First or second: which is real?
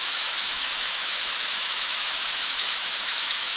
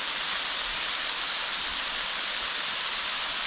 second